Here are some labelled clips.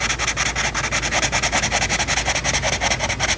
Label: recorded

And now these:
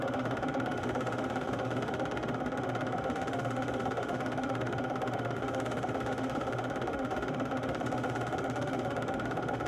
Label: remade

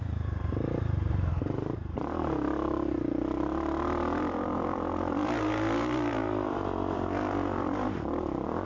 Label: remade